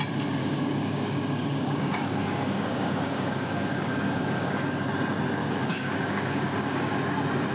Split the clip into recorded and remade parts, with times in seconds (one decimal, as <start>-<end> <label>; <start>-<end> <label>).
0.0-0.4 recorded; 0.4-4.5 remade; 4.5-5.4 recorded; 5.4-6.9 remade; 6.9-7.5 recorded

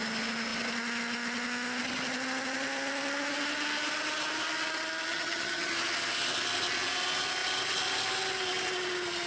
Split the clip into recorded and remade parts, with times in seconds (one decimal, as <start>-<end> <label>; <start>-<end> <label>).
0.0-5.1 recorded; 5.1-5.7 remade; 5.7-9.3 recorded

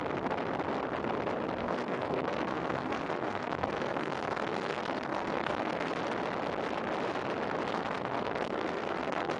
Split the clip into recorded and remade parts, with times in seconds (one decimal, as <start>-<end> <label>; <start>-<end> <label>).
0.0-1.6 recorded; 1.6-5.9 remade; 5.9-7.7 recorded; 7.7-9.4 remade

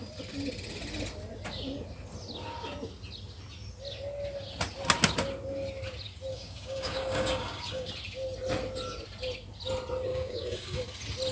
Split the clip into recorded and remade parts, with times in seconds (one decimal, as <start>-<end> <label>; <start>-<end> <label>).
0.0-6.3 recorded; 6.3-7.9 remade; 7.9-10.1 recorded; 10.1-10.8 remade; 10.8-11.3 recorded

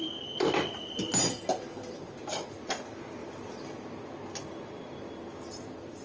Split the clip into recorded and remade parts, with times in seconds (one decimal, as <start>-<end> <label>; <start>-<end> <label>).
0.0-6.0 recorded